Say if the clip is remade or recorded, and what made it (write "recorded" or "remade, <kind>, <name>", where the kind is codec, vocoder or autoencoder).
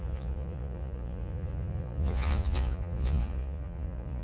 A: remade, vocoder, Vocos